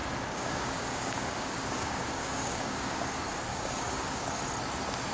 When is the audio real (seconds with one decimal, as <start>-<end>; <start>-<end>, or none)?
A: 3.1-3.5; 4.3-5.1